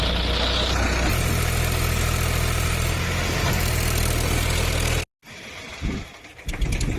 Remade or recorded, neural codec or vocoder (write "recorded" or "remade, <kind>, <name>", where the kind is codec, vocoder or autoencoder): recorded